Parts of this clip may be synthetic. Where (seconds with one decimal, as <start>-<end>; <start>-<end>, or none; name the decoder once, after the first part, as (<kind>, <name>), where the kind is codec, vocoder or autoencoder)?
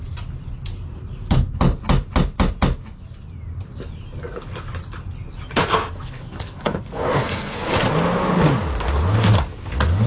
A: 5.6-7.7 (codec, SNAC)